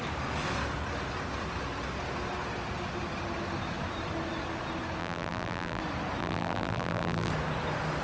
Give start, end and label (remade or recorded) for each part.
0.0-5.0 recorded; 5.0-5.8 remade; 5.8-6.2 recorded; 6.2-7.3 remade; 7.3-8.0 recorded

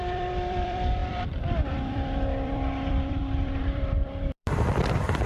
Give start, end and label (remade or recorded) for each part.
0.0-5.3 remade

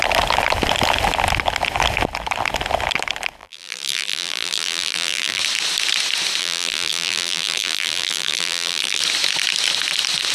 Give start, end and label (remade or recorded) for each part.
0.0-3.4 recorded; 3.4-5.4 remade; 5.4-6.4 recorded; 6.4-9.0 remade; 9.0-10.3 recorded